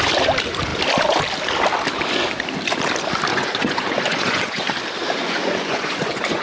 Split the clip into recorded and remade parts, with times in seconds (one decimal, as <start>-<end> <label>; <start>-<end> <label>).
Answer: 0.0-3.3 recorded; 3.3-4.7 remade; 4.7-5.2 recorded; 5.2-6.4 remade